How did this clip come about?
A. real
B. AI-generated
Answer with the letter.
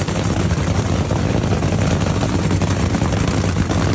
A